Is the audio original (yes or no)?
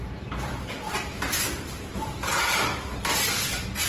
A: no